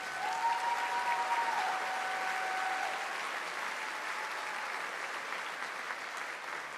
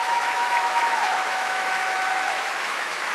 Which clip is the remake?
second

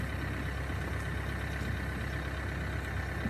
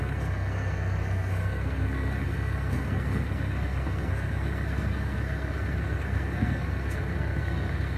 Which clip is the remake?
second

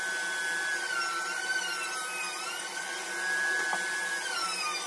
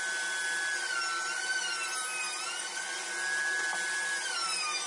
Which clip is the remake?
first